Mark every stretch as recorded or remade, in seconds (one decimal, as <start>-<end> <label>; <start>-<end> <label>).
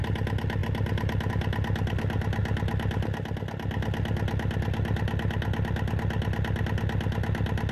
0.0-7.7 recorded